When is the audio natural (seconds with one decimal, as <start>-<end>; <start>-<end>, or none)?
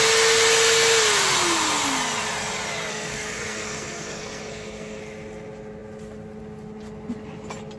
0.0-2.9; 5.0-7.8